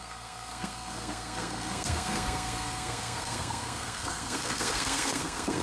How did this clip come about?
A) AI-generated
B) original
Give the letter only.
A